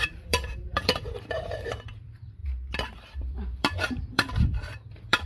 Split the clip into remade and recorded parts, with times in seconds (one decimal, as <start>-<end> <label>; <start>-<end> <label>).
0.0-5.3 remade